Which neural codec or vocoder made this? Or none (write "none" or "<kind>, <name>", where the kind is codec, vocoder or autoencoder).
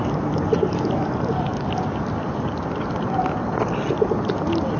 none